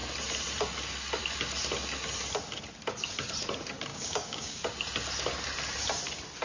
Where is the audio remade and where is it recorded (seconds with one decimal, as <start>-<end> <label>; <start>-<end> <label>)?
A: 0.0-3.9 recorded; 3.9-4.6 remade; 4.6-6.4 recorded